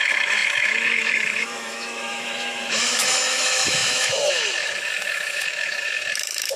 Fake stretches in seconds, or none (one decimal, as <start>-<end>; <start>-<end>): 0.0-6.6

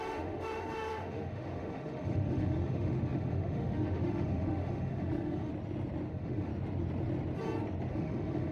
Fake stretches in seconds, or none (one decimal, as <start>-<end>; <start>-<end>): 0.0-5.5; 6.1-6.5; 7.9-8.5

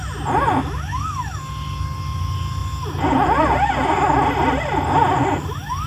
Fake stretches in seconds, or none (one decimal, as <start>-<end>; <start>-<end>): none

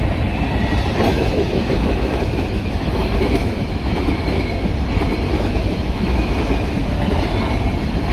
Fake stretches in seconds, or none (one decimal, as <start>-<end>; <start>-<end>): 1.1-4.5; 5.3-7.1

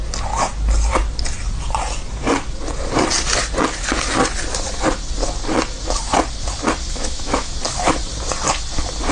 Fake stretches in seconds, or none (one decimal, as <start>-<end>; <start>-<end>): 6.9-7.5

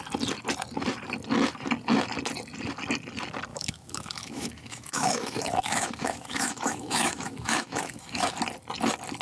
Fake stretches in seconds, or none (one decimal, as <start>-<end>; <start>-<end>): 3.5-8.3